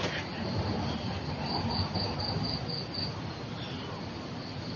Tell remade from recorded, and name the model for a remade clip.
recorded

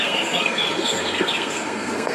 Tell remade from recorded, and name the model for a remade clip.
remade, codec, SNAC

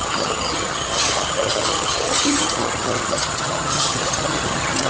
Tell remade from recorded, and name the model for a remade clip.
remade, vocoder, HiFi-GAN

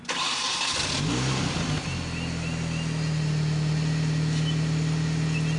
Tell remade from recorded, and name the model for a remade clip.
recorded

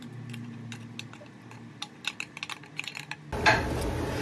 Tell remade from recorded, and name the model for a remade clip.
recorded